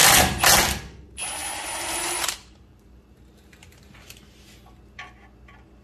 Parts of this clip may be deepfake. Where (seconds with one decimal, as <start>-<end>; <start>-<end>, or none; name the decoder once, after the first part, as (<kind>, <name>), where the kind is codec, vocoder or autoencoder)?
1.4-4.4 (vocoder, BigVGAN v2)